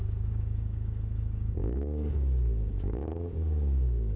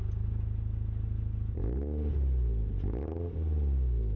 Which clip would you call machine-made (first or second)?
first